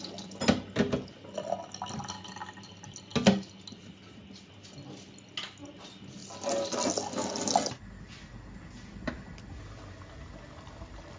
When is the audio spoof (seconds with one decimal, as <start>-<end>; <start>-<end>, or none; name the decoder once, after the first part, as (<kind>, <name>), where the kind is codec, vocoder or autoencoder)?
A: none